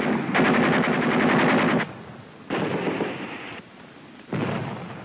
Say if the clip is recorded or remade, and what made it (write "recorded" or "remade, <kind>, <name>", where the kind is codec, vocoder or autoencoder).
recorded